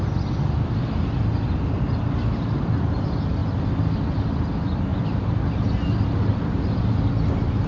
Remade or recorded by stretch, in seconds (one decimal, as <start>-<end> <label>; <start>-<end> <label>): 0.0-4.9 recorded; 4.9-5.5 remade; 5.5-7.7 recorded